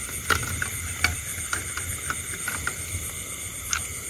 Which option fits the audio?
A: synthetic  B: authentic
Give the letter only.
B